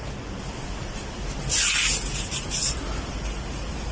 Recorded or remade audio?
recorded